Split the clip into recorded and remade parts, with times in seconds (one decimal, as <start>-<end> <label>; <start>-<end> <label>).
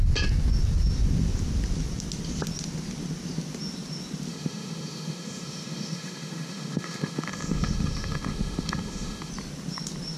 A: 0.0-4.3 recorded; 4.3-9.3 remade; 9.3-10.2 recorded